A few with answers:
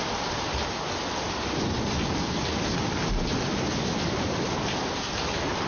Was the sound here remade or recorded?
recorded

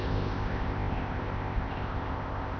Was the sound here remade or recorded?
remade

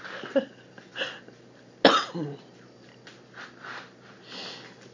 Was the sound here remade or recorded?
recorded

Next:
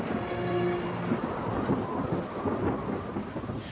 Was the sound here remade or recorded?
recorded